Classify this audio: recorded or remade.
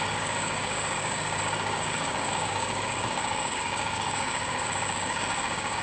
remade